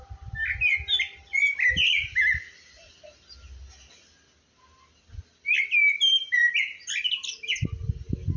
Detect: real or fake real